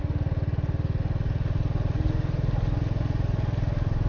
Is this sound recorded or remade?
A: recorded